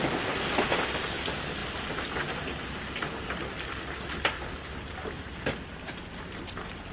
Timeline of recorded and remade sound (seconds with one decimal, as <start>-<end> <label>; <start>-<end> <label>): 0.0-6.9 recorded